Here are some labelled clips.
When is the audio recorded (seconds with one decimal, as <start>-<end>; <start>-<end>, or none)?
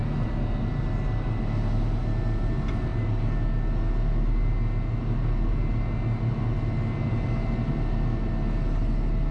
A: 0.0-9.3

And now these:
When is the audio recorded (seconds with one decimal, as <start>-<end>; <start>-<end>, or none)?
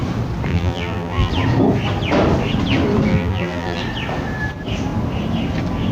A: 0.0-0.5; 1.3-3.1; 3.8-5.9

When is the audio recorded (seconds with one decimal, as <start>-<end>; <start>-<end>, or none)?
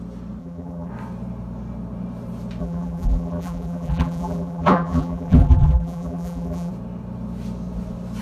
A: 0.0-0.4; 0.9-2.6; 6.7-8.2